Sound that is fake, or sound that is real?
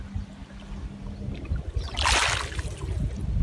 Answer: real